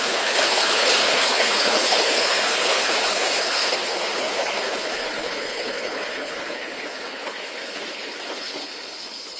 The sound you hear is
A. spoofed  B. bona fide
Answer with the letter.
A